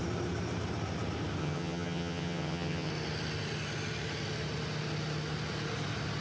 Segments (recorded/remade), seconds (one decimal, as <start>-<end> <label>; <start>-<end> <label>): 0.0-1.4 recorded; 1.4-2.9 remade; 2.9-6.2 recorded